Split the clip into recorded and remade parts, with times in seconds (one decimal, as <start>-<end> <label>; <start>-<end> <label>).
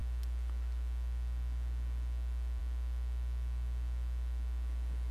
0.0-5.1 recorded